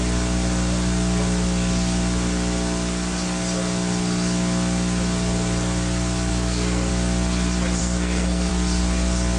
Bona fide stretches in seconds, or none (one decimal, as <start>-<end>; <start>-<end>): 0.0-6.3; 6.9-7.8; 8.5-9.4